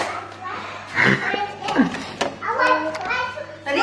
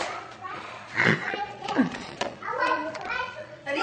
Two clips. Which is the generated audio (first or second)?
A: second